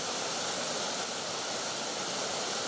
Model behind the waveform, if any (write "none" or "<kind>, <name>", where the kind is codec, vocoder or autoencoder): none